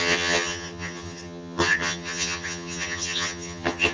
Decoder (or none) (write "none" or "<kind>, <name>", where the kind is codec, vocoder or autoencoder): vocoder, HiFi-GAN